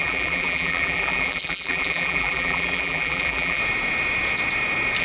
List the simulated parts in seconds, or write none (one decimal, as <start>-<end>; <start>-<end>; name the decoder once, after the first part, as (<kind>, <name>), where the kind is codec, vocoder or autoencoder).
0.0-3.6 (vocoder, BigVGAN v2)